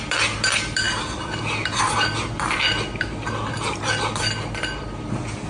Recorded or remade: recorded